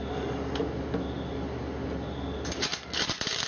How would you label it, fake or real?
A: real